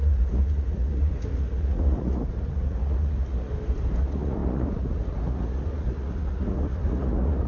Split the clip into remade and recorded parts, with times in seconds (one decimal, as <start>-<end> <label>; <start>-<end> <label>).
0.0-3.5 remade; 3.5-4.0 recorded; 4.0-7.5 remade